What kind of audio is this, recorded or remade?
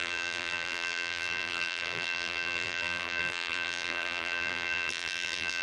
remade